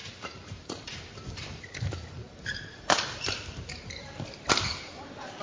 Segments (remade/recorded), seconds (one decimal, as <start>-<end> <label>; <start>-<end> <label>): 0.0-5.4 remade